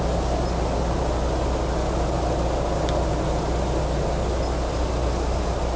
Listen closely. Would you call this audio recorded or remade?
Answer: recorded